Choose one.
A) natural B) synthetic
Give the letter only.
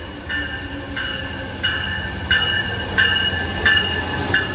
A